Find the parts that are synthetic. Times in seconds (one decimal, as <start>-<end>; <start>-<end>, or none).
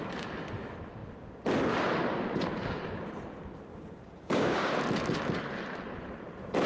3.7-4.7